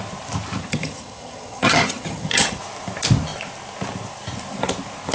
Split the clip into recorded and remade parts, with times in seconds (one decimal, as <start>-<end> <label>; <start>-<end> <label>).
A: 0.0-0.6 recorded; 0.6-2.6 remade; 2.6-5.1 recorded